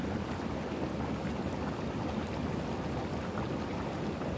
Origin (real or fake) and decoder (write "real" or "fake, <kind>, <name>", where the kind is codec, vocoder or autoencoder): real